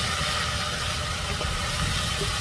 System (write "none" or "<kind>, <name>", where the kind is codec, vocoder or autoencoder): none